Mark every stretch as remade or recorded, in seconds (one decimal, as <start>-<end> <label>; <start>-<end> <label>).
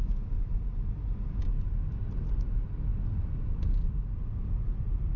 0.0-5.2 recorded